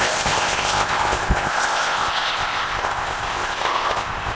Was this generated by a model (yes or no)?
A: yes